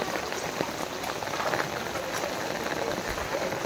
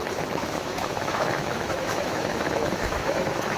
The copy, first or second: second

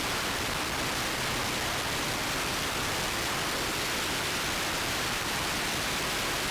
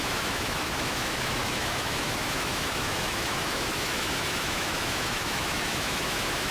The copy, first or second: second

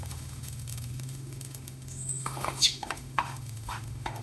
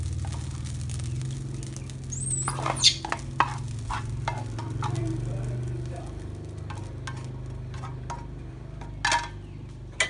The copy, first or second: first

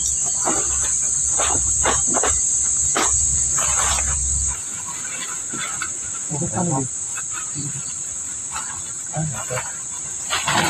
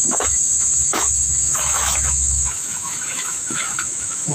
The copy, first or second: second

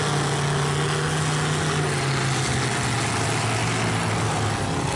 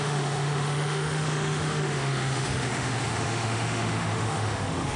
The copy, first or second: second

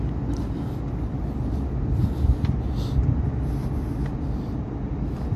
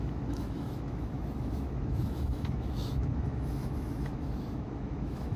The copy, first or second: second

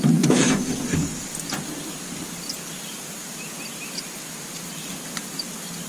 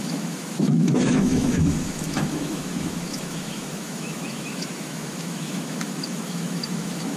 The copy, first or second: second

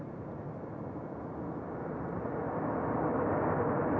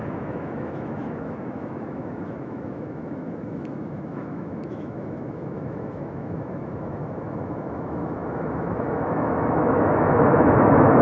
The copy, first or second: second